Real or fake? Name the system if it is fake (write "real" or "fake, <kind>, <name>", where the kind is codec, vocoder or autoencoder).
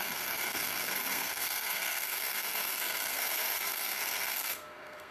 fake, codec, SNAC